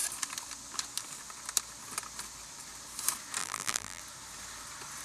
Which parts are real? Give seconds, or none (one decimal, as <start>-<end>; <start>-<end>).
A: 0.0-3.4; 4.0-5.0